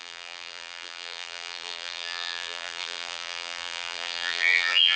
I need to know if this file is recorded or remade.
remade